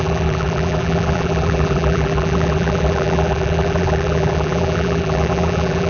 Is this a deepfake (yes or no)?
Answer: yes